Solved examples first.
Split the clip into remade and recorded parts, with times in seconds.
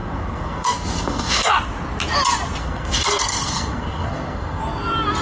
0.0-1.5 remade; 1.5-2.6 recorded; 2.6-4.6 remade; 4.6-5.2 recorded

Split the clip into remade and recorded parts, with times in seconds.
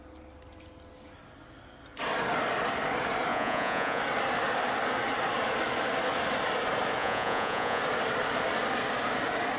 0.0-3.3 recorded; 3.3-4.0 remade; 4.0-7.0 recorded; 7.0-7.8 remade; 7.8-9.6 recorded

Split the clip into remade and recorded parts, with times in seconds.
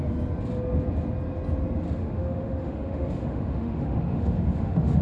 0.0-2.0 recorded; 2.0-5.0 remade